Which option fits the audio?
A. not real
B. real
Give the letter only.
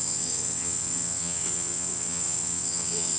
A